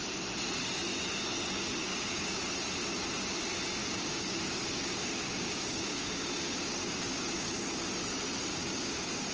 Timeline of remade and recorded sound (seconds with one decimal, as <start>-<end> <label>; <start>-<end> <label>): 0.0-1.8 recorded; 1.8-2.4 remade; 2.4-3.8 recorded; 3.8-6.3 remade; 6.3-6.8 recorded; 6.8-7.9 remade; 7.9-8.5 recorded; 8.5-9.3 remade